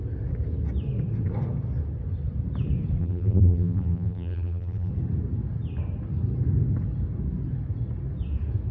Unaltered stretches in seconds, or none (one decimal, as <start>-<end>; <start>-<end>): 0.0-3.0; 4.9-8.7